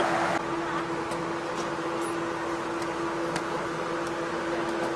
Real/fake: real